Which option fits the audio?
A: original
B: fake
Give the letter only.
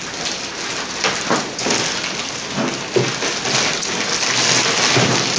A